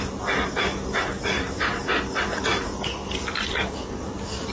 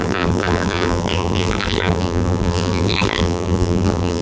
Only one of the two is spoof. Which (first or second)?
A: second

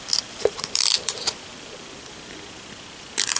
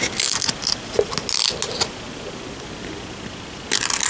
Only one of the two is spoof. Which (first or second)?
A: first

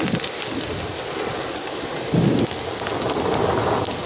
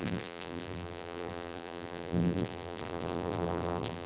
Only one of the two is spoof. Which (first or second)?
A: second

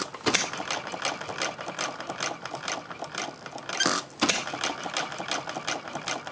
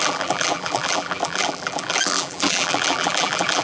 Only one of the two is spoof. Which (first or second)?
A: second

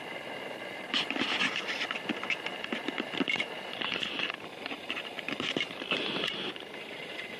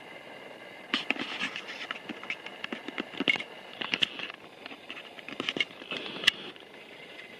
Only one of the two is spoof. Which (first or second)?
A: first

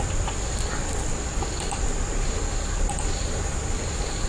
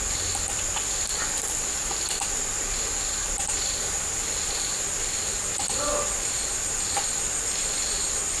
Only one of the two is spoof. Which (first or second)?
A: first